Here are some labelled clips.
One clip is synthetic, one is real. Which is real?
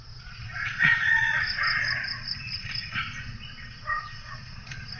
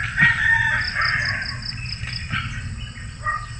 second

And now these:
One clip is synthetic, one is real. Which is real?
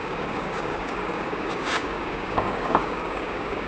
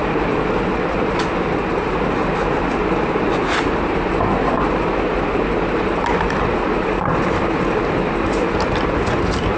second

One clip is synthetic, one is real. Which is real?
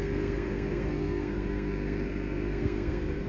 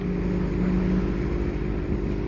second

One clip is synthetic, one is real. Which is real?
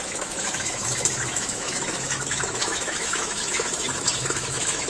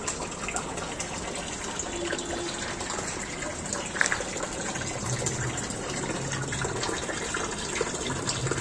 second